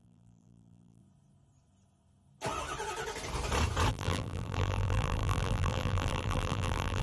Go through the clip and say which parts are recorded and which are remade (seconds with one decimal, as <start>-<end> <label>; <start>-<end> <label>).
0.0-1.0 remade; 1.0-3.9 recorded; 3.9-7.0 remade

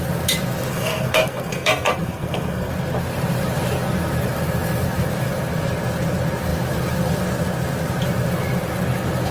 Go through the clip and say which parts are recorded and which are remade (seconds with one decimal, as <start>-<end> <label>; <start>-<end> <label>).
0.0-0.7 recorded; 0.7-2.7 remade; 2.7-9.3 recorded